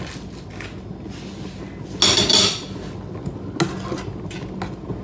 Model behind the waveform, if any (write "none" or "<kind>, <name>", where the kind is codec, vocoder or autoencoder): none